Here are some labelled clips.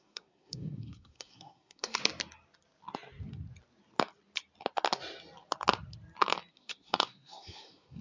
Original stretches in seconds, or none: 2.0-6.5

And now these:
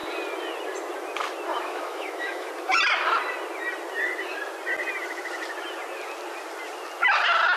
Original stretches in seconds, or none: 0.0-1.5; 2.5-7.6